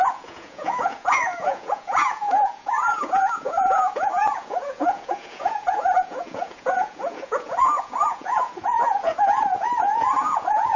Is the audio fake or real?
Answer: fake